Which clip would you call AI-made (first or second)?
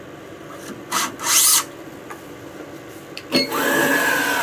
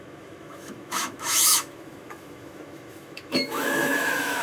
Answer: second